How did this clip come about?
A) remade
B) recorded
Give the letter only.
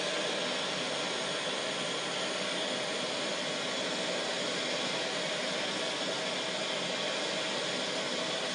B